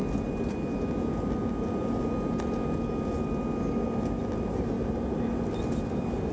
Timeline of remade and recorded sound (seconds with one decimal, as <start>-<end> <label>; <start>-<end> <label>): 0.0-6.3 recorded

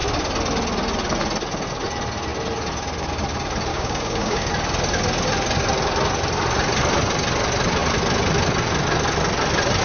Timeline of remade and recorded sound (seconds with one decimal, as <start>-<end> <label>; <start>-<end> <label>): 0.0-3.7 recorded; 3.7-4.5 remade; 4.5-9.8 recorded

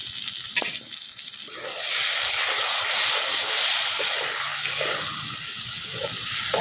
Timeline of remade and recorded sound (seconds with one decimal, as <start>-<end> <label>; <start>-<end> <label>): 0.0-6.6 recorded

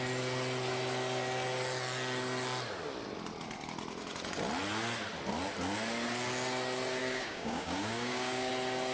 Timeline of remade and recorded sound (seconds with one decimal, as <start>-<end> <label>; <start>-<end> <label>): 0.0-7.0 recorded; 7.0-8.5 remade; 8.5-8.9 recorded

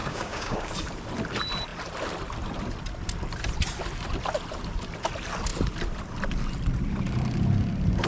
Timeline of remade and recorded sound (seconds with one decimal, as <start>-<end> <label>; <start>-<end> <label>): 0.0-0.7 remade; 0.7-8.1 recorded

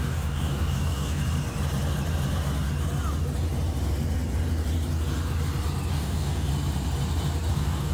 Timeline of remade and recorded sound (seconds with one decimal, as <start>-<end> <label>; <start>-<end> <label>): 0.0-1.2 remade; 1.2-5.9 recorded; 5.9-6.5 remade; 6.5-7.5 recorded; 7.5-7.9 remade

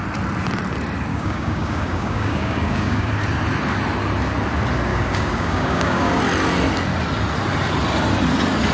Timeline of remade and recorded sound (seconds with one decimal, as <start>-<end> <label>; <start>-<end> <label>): 0.0-1.1 recorded; 1.1-3.1 remade; 3.1-4.9 recorded; 4.9-6.2 remade; 6.2-8.7 recorded